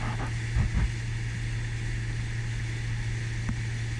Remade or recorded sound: recorded